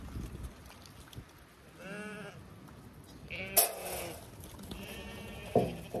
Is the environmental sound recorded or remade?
recorded